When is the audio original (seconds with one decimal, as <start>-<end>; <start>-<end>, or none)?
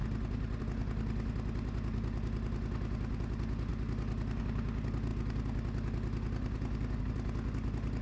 0.6-3.7; 4.4-8.0